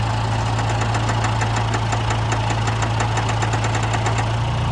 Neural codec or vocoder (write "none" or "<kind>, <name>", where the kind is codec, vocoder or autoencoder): none